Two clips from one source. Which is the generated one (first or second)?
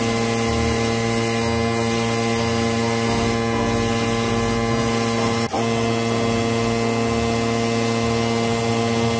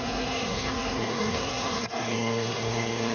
second